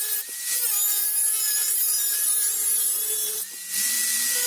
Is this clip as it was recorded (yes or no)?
yes